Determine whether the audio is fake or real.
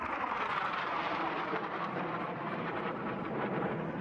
fake